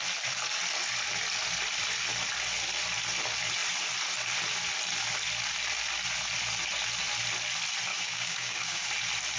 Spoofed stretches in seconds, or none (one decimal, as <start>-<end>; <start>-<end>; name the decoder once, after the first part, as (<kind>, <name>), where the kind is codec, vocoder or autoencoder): 7.9-8.9 (codec, DAC)

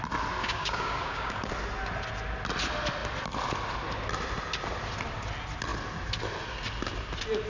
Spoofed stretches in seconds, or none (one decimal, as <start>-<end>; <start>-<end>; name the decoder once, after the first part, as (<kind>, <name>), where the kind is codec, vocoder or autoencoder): 0.4-1.5 (codec, DAC)

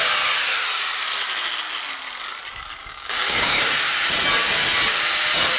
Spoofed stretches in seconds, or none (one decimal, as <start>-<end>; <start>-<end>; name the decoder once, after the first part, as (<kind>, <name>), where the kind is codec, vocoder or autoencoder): 2.8-3.8 (codec, DAC)